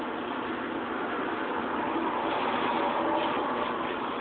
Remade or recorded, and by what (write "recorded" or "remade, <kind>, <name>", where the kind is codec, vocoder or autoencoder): recorded